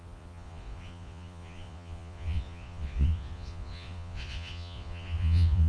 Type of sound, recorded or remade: remade